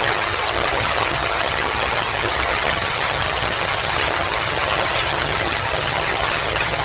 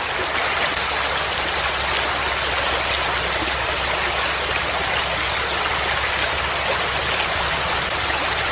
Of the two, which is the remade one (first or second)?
first